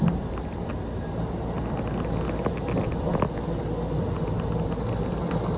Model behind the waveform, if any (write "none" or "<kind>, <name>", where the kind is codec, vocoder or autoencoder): none